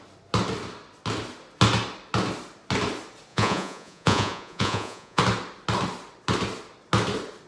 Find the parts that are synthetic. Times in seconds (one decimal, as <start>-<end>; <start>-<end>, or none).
3.3-5.2